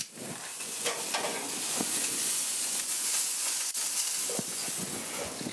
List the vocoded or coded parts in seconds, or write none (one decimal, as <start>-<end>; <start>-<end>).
0.5-3.8; 4.5-5.5